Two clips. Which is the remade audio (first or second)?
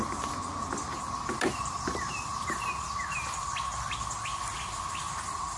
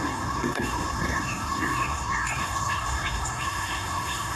second